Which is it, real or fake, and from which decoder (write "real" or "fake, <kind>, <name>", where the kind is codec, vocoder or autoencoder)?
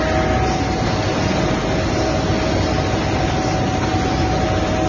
real